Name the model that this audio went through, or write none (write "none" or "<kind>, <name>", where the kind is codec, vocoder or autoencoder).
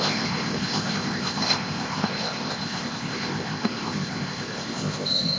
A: codec, ZipCodec